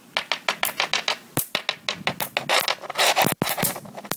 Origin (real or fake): real